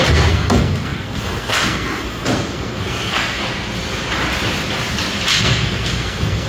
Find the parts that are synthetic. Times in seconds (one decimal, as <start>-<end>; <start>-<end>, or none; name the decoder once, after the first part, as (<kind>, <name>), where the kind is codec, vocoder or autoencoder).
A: 0.0-3.4 (codec, SNAC); 5.3-6.5